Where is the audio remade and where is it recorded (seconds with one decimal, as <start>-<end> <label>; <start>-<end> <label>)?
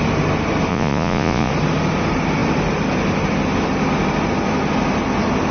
0.0-0.7 recorded; 0.7-1.5 remade; 1.5-5.5 recorded